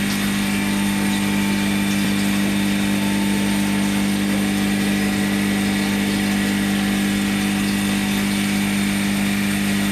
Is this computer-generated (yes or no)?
no